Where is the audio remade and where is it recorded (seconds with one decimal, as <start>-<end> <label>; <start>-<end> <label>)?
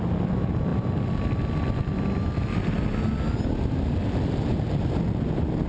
0.0-5.7 recorded